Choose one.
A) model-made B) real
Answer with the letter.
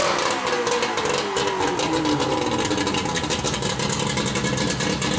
B